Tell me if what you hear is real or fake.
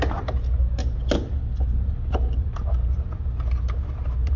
real